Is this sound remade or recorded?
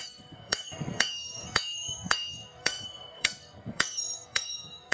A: remade